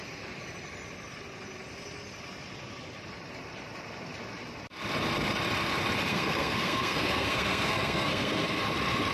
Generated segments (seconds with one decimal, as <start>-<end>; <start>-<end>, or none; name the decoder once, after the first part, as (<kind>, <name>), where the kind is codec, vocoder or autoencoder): 6.1-8.6 (codec, SNAC)

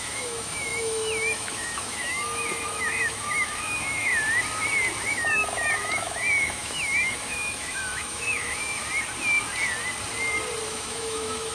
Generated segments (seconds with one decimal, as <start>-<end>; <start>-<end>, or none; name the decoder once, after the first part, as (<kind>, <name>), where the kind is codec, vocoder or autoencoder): 0.0-4.1 (autoencoder, DAC-VAE); 5.1-8.8; 10.7-11.5

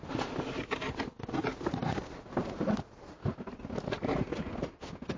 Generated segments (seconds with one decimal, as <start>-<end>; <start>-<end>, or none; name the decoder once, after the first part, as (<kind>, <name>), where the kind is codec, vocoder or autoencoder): none